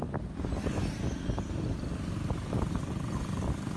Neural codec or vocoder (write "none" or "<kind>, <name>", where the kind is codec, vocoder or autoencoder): none